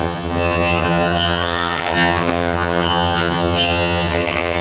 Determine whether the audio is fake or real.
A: fake